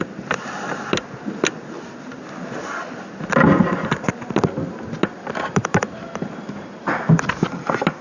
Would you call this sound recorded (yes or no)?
yes